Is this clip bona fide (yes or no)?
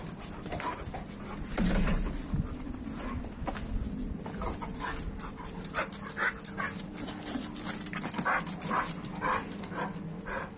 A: yes